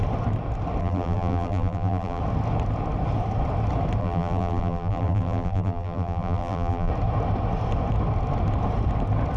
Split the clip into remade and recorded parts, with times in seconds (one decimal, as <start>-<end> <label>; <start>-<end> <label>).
0.0-0.8 recorded; 0.8-2.2 remade; 2.2-4.0 recorded; 4.0-6.9 remade; 6.9-9.4 recorded